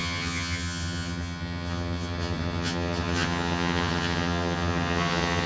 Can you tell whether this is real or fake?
fake